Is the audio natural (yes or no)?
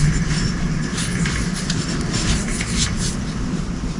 yes